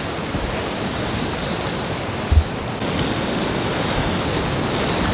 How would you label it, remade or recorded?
recorded